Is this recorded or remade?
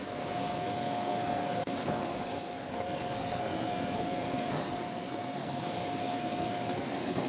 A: remade